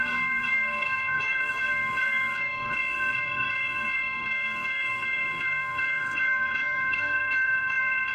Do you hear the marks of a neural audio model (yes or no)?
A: yes